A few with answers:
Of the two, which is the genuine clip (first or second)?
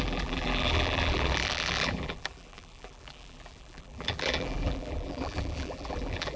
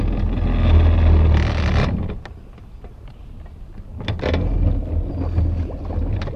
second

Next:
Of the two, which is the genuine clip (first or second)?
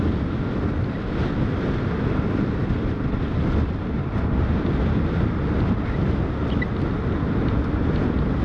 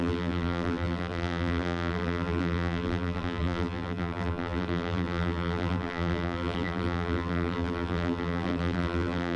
first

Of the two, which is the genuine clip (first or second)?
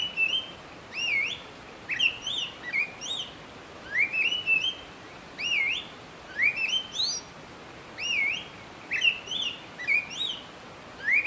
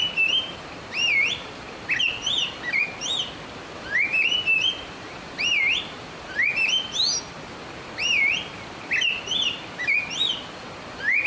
first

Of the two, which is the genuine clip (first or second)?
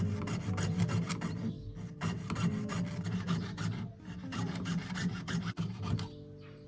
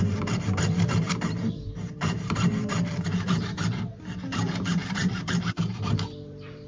first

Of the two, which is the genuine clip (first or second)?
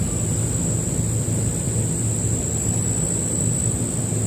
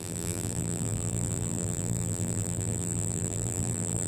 first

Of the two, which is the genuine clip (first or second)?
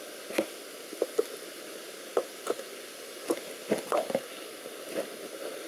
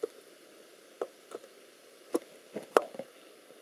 first